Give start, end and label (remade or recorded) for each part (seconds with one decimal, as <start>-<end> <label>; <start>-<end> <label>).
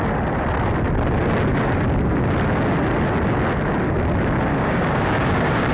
0.0-4.5 recorded; 4.5-5.7 remade